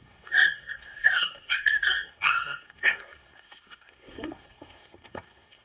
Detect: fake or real fake